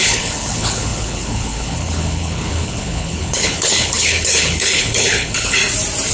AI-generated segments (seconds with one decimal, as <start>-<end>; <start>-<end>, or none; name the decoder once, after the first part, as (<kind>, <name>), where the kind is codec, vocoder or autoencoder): 0.0-5.6 (codec, HILCodec)